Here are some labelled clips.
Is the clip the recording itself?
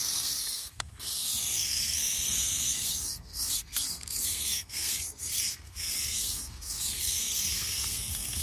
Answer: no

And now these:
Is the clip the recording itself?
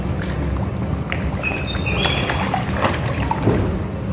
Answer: yes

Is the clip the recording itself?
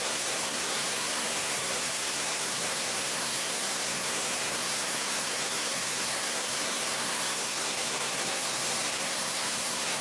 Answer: no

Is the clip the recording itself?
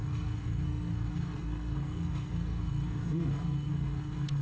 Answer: no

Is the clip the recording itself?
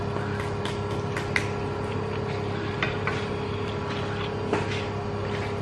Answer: yes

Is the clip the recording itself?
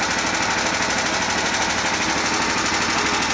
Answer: yes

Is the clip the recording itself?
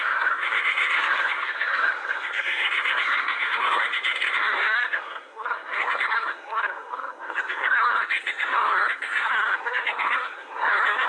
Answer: no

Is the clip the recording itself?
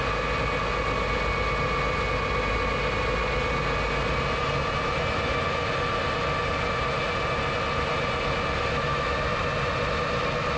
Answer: yes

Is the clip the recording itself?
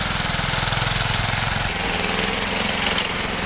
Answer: yes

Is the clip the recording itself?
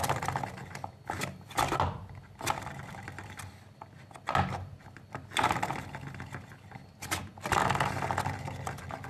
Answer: yes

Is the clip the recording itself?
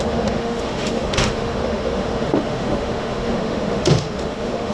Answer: no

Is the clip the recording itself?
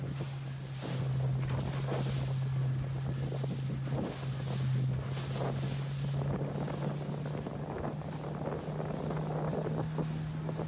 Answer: yes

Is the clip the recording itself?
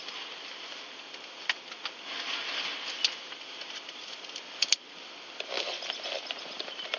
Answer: yes